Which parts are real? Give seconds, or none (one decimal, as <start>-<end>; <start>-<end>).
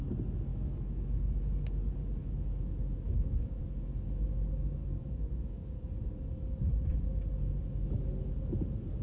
0.0-0.5; 1.5-2.2; 3.6-4.8; 5.9-9.0